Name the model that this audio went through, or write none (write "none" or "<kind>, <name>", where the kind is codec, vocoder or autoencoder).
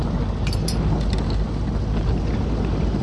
none